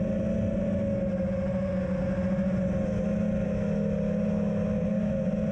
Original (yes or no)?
yes